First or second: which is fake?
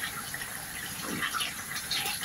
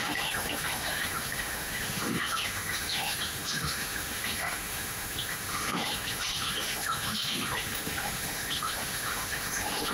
second